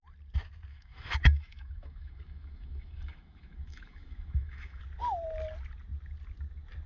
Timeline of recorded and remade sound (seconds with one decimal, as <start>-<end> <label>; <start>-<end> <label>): 0.0-0.7 recorded; 0.7-4.8 remade; 4.8-6.9 recorded